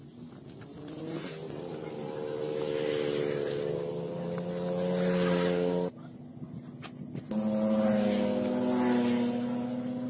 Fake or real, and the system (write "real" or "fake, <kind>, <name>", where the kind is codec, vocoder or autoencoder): real